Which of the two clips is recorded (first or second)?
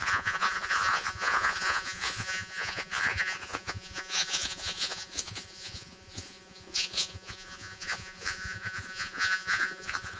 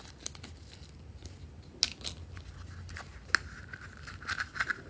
second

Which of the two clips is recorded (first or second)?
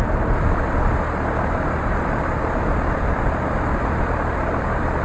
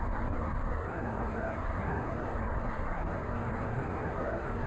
first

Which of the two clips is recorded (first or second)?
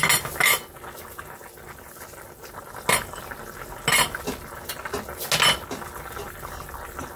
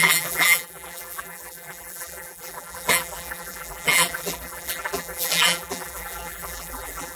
first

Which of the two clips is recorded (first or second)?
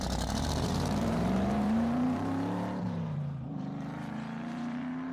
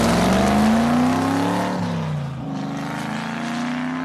second